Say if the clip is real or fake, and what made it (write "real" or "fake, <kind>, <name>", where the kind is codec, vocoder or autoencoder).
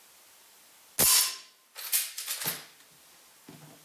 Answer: real